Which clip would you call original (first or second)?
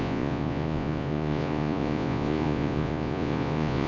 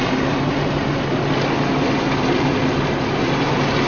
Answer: second